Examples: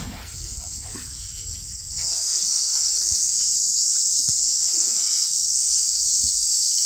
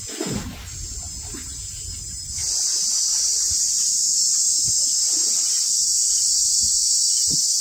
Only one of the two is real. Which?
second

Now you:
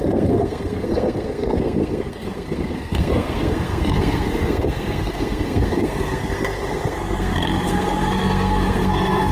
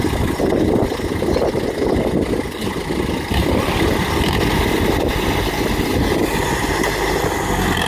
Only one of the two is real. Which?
second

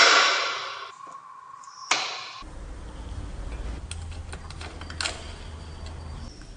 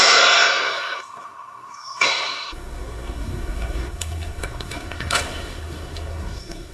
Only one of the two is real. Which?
first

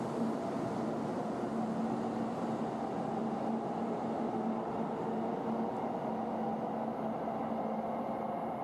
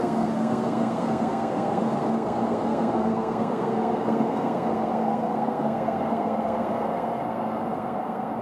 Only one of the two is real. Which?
first